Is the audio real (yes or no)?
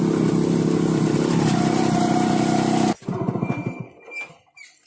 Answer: yes